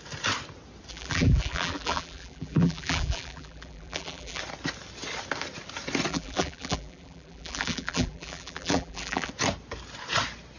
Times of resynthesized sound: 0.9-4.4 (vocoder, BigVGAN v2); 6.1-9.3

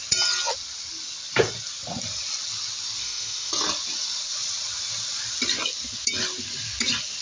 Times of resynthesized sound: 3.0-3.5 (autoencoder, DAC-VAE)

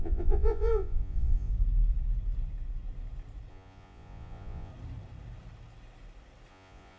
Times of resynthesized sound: 0.0-1.5 (vocoder, Vocos); 3.5-4.7; 6.5-7.0